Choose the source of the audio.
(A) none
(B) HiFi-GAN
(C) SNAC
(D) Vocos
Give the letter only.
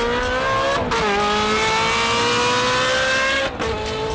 A